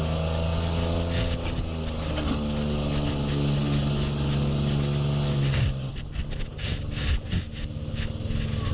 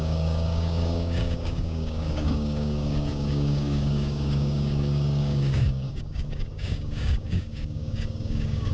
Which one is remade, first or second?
second